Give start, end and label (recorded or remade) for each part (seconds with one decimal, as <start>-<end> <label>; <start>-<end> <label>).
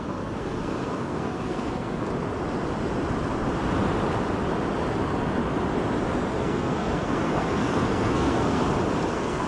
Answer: 0.0-2.1 remade; 2.1-6.4 recorded; 6.4-8.6 remade; 8.6-9.1 recorded; 9.1-9.5 remade